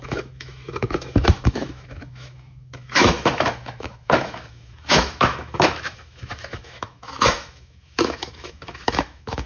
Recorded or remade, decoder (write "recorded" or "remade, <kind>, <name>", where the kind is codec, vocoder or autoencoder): remade, autoencoder, DAC-VAE